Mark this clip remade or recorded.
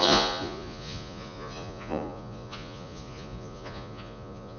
remade